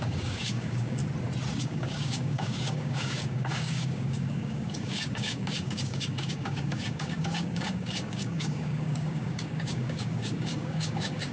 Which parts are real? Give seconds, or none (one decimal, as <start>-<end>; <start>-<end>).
1.0-1.6